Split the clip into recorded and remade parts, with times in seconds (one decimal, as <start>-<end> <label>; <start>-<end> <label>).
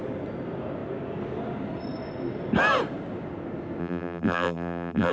0.0-3.8 recorded; 3.8-5.1 remade